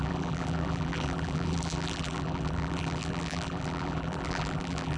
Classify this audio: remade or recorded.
remade